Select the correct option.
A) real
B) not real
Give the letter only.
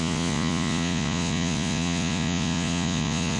B